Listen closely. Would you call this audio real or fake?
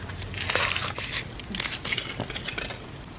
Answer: real